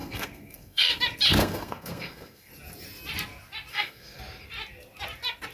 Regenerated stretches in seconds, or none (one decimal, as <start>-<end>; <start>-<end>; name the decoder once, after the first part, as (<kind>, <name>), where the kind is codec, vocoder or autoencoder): 0.0-1.0 (codec, SNAC); 1.4-2.5; 3.7-4.2